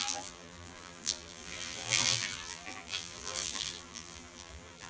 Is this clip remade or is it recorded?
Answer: remade